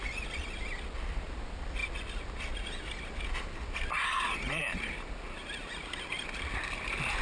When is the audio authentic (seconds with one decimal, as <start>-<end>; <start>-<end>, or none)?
0.0-7.2